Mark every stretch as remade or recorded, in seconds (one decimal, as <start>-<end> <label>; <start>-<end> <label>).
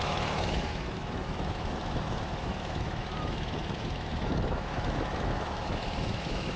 0.0-6.6 remade